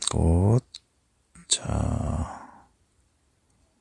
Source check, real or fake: fake